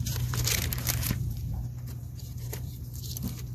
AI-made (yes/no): yes